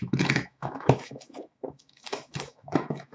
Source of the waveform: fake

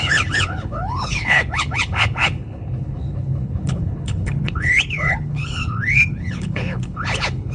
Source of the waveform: fake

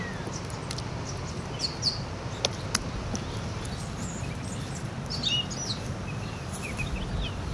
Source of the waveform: real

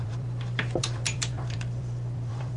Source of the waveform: fake